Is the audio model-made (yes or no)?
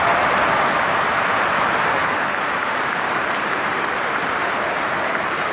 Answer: yes